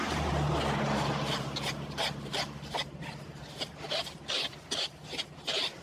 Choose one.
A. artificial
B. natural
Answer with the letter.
A